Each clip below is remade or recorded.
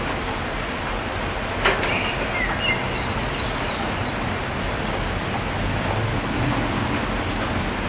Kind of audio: recorded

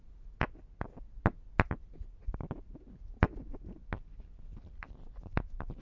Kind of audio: recorded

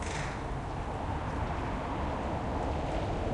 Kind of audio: recorded